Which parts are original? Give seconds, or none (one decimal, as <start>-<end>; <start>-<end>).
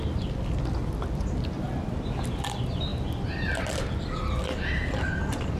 0.0-5.6